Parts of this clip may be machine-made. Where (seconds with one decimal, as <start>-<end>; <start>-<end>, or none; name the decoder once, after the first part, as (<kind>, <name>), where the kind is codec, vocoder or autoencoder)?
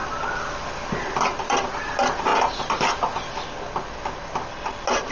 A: none